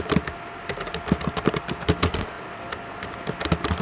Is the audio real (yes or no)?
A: yes